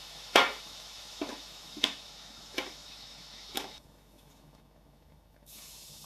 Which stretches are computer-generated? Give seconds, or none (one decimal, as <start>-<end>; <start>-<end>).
0.0-6.1